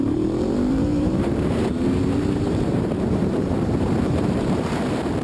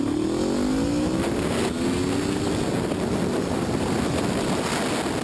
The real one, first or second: second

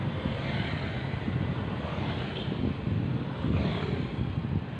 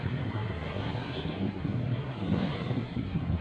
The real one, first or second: first